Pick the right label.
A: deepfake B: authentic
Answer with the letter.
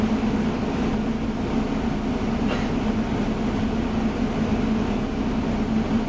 B